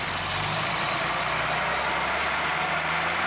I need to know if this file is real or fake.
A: fake